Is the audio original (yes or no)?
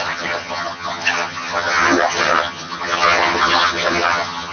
no